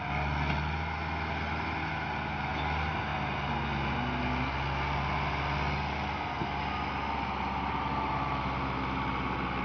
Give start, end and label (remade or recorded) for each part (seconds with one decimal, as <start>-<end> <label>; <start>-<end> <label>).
0.0-9.6 recorded